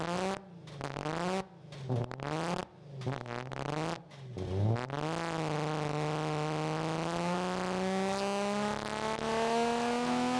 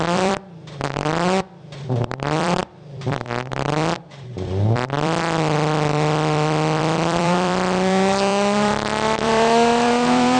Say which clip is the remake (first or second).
second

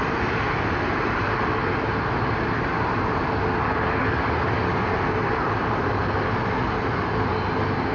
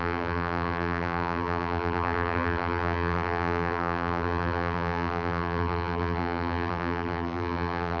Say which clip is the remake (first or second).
second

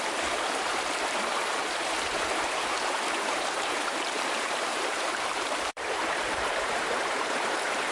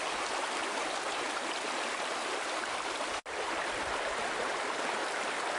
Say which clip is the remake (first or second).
first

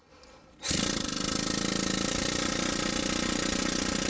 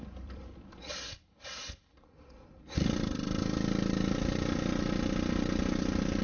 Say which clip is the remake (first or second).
second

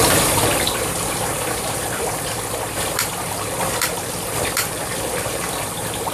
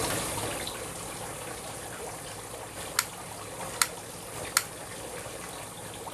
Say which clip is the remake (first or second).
first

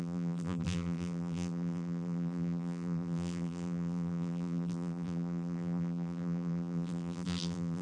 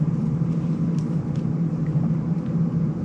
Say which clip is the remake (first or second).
first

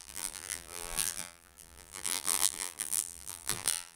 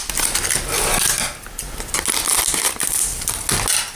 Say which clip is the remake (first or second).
first